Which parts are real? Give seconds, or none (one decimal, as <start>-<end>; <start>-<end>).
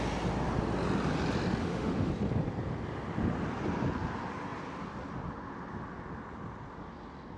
0.0-1.6; 2.1-7.4